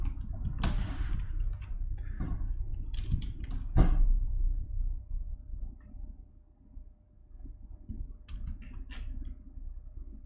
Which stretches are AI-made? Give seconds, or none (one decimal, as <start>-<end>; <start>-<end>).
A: 0.8-1.3; 2.7-3.5; 5.3-6.3

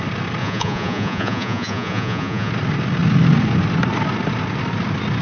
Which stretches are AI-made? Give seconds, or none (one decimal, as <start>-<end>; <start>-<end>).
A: 0.4-2.5

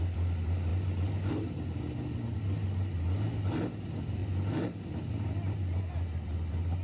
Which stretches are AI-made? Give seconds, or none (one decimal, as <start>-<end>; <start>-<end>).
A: none

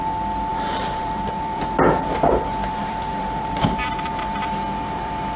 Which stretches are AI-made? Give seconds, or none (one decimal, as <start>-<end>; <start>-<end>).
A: 0.5-1.6; 2.1-5.4

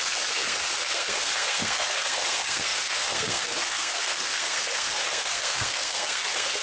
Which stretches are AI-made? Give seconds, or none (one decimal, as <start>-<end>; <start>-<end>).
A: 0.0-6.6

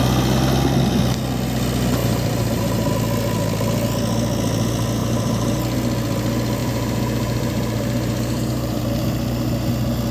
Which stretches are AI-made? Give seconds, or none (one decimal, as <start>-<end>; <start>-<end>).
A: 2.0-2.9; 5.0-5.6; 6.6-8.8